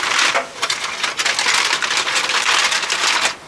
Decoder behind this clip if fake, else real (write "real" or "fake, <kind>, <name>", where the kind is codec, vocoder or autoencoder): real